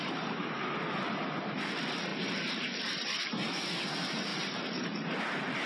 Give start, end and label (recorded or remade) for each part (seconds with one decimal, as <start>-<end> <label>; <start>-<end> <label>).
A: 0.0-2.1 recorded; 2.1-3.6 remade; 3.6-4.3 recorded; 4.3-4.8 remade; 4.8-5.7 recorded